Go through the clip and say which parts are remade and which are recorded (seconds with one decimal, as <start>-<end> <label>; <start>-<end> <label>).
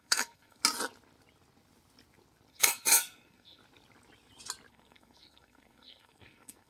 0.0-0.6 remade; 0.6-2.5 recorded; 2.5-3.6 remade; 3.6-4.7 recorded; 4.7-6.7 remade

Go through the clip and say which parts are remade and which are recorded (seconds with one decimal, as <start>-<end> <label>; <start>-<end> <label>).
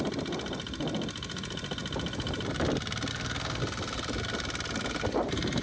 0.0-3.1 recorded; 3.1-3.6 remade; 3.6-5.6 recorded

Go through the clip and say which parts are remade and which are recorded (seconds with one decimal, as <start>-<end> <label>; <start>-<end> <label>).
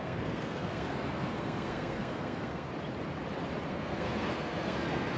0.0-2.7 remade; 2.7-3.7 recorded; 3.7-5.2 remade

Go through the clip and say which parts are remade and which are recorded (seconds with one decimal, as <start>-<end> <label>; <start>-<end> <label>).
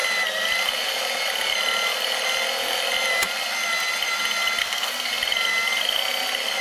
0.0-4.6 recorded; 4.6-5.1 remade; 5.1-6.6 recorded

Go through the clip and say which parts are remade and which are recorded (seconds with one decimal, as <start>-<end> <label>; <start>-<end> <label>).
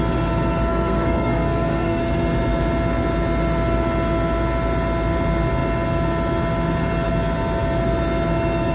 0.0-0.7 recorded; 0.7-2.0 remade; 2.0-8.7 recorded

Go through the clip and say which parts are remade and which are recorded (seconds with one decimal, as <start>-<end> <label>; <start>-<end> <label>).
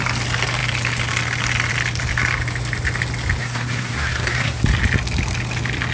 0.0-3.4 recorded; 3.4-4.6 remade; 4.6-5.9 recorded